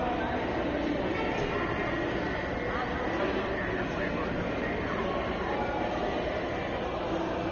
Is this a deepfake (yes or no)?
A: no